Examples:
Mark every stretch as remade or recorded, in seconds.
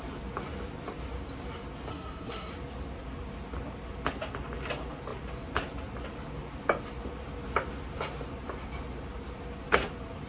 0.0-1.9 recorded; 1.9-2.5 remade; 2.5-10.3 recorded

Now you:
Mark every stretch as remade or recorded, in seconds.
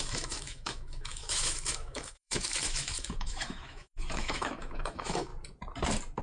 0.0-5.3 remade; 5.3-6.2 recorded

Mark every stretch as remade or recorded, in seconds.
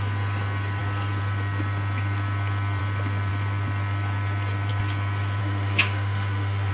0.0-5.4 recorded; 5.4-6.7 remade